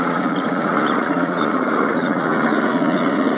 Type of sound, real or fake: fake